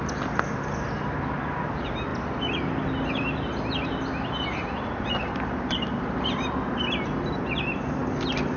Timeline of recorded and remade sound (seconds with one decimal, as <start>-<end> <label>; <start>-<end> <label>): 0.0-8.6 recorded